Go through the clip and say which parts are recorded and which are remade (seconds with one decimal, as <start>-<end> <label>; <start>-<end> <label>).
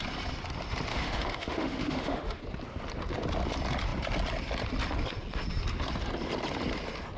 0.0-0.9 recorded; 0.9-2.4 remade; 2.4-7.2 recorded